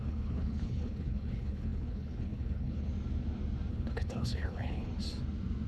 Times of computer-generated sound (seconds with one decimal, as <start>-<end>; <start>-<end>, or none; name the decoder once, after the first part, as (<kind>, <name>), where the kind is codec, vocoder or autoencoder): 0.0-2.9 (codec, HILCodec); 3.7-4.9

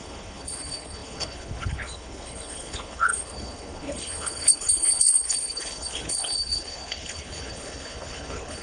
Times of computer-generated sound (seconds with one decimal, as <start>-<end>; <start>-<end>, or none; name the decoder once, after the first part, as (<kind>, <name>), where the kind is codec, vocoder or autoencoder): 0.0-8.6 (codec, HILCodec)

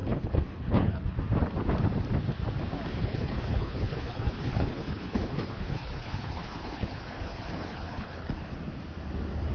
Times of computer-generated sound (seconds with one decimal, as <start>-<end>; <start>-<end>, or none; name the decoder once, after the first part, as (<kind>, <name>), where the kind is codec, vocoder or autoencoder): 0.0-1.2 (codec, HILCodec); 3.0-8.3

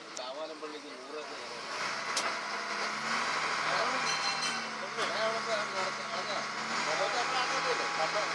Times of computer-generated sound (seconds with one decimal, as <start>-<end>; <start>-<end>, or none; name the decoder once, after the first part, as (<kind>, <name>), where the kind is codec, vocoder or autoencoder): none

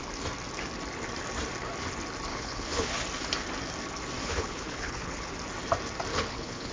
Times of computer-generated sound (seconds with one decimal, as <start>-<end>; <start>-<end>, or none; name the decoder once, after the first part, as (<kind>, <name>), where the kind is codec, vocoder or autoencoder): 2.3-2.9 (codec, HILCodec); 4.2-5.3; 6.1-6.7

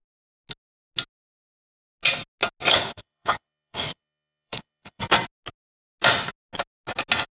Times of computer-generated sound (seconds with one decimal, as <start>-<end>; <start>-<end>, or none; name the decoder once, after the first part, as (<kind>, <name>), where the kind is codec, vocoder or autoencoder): 2.7-5.0 (codec, HILCodec)

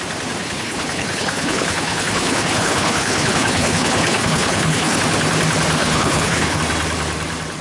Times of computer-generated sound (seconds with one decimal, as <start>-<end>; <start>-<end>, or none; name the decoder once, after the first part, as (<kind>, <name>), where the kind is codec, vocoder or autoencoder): 0.4-5.0 (codec, HILCodec); 5.8-6.6

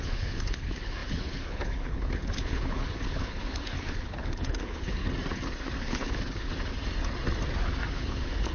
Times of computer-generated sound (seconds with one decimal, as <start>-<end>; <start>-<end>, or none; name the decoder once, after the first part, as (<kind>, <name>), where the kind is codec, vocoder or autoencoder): 0.0-5.0 (codec, HILCodec); 5.8-6.5; 7.9-8.5